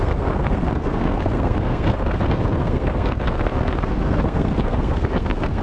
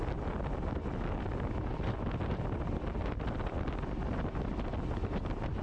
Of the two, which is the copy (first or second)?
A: first